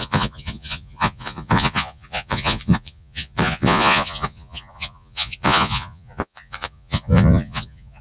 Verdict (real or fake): fake